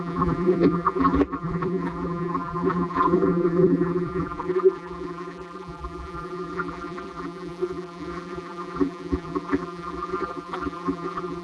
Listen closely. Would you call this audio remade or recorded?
remade